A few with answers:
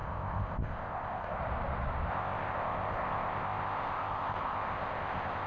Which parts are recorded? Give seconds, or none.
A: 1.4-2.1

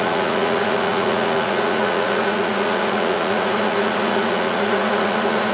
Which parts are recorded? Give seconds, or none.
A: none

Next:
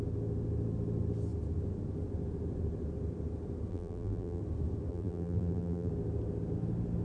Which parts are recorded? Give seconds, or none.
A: 0.0-3.7; 4.4-4.9; 5.9-7.0